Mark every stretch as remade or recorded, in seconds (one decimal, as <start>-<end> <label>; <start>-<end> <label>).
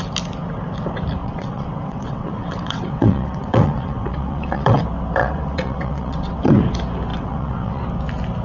0.0-1.2 recorded; 1.2-4.8 remade; 4.8-5.2 recorded; 5.2-6.6 remade; 6.6-7.1 recorded; 7.1-7.8 remade; 7.8-8.4 recorded